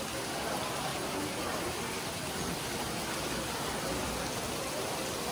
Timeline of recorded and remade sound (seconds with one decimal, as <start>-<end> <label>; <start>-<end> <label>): 0.0-5.3 recorded